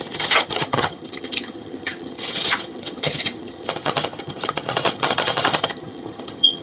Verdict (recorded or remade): remade